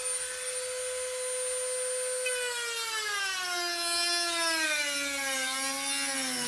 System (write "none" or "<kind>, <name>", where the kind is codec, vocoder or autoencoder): none